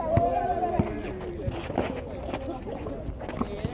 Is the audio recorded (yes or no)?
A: yes